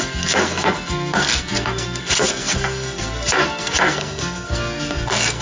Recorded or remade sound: remade